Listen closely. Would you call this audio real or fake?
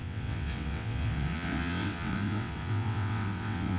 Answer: fake